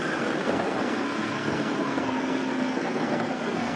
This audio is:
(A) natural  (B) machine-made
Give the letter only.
B